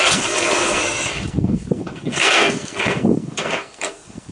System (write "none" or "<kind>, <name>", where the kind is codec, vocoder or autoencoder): codec, SNAC